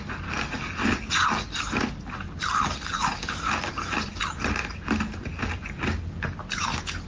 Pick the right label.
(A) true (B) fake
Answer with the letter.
A